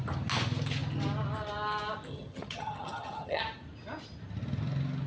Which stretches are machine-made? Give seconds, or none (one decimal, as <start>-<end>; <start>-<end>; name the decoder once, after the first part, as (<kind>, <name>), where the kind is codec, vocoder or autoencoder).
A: 2.1-3.4 (vocoder, HiFi-GAN)